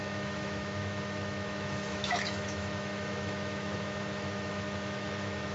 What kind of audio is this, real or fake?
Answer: fake